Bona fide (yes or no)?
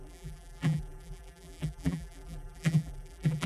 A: no